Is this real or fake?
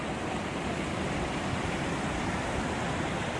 real